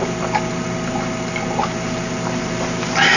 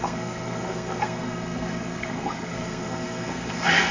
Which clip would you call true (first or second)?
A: first